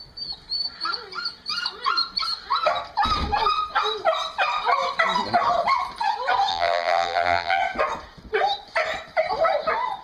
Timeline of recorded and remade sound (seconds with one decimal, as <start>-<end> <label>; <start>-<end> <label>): 0.0-6.5 recorded; 6.5-7.6 remade; 7.6-10.0 recorded